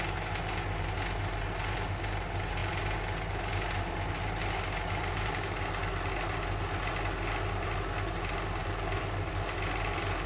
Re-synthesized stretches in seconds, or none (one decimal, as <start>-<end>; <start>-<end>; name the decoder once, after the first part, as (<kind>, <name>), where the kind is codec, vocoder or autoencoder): none